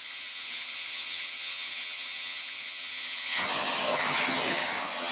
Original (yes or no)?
no